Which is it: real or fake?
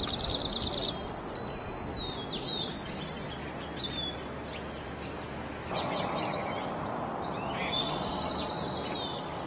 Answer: real